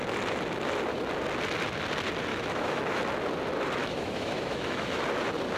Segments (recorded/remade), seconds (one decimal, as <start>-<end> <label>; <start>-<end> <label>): 0.0-2.3 recorded; 2.3-3.0 remade; 3.0-3.8 recorded; 3.8-5.0 remade; 5.0-5.6 recorded